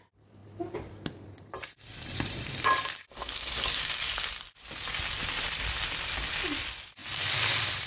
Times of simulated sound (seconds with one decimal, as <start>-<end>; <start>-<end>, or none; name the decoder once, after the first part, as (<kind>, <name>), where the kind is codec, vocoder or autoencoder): 0.4-3.0 (vocoder, BigVGAN v2); 7.0-7.9